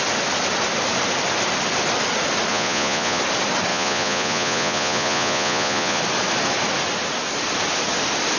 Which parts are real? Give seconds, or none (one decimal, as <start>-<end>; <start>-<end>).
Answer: 0.0-2.5; 3.2-3.7; 6.0-8.4